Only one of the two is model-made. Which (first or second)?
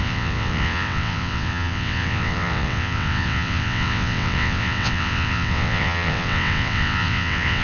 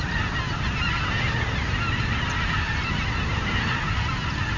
first